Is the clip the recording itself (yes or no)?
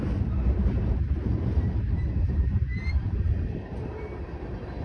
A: no